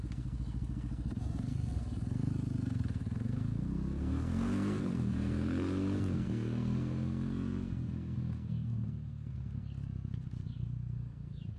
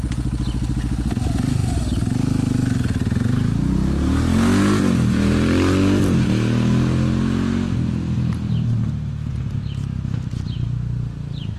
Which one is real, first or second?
second